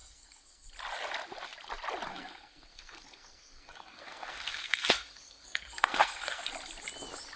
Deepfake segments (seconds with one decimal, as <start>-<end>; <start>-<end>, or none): 0.0-0.7; 2.1-6.5